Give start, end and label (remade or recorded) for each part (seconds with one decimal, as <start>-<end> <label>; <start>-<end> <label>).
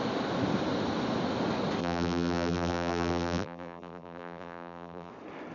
0.0-1.8 recorded; 1.8-5.1 remade; 5.1-5.5 recorded